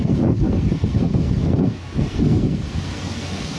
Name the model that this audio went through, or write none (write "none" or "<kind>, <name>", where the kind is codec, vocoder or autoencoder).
codec, SNAC